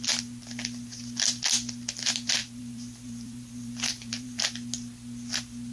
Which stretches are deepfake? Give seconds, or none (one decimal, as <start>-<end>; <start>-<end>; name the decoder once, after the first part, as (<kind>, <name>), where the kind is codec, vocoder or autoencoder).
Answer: 2.4-4.4 (vocoder, BigVGAN v2)